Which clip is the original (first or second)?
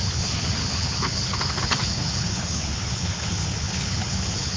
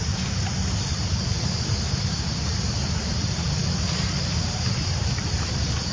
second